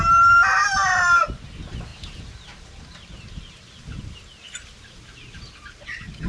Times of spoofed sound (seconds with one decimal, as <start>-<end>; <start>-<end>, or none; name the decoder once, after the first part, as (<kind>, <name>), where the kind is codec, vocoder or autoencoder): none